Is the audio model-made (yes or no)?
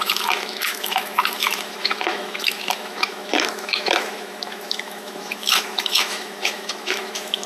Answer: yes